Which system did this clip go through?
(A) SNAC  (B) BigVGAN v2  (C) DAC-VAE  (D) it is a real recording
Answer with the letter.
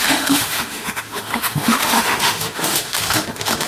C